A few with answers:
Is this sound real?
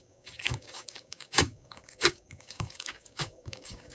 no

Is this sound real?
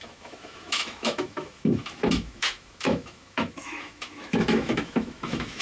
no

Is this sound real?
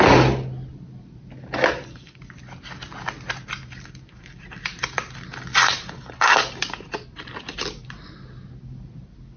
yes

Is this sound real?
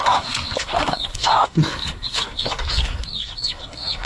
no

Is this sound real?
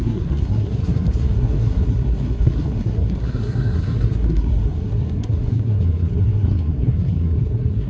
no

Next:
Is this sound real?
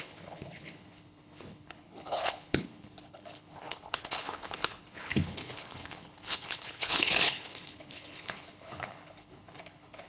no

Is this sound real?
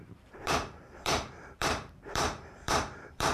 no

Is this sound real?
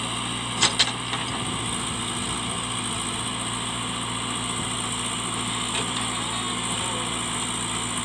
yes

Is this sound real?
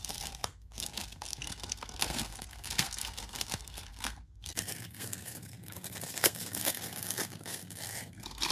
no